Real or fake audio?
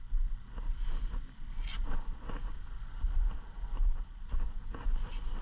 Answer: real